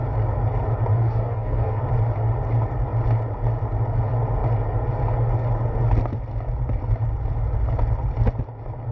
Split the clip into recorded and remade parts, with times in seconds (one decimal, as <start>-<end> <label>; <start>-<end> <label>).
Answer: 0.0-0.9 recorded; 0.9-1.8 remade; 1.8-8.9 recorded